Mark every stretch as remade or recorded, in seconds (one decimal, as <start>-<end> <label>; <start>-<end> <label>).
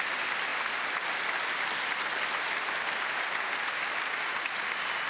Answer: 0.0-5.1 recorded